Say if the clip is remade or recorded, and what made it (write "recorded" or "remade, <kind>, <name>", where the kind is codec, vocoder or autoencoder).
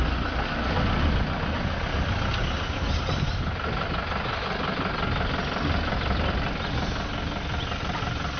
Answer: recorded